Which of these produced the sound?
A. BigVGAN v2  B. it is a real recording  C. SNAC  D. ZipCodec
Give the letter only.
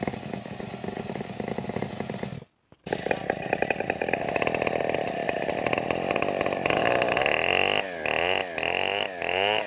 B